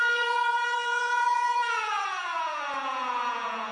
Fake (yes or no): yes